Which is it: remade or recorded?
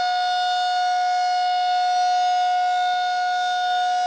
recorded